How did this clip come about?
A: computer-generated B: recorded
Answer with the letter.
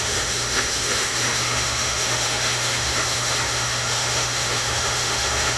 A